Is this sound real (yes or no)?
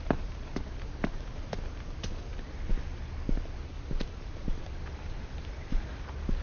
yes